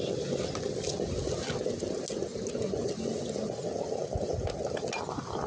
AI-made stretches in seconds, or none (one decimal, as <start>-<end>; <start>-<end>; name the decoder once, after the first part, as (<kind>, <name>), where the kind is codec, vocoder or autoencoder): none